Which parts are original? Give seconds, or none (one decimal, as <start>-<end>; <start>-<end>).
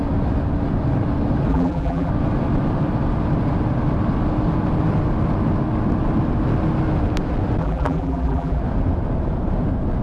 0.0-1.5; 2.1-7.6; 8.6-10.0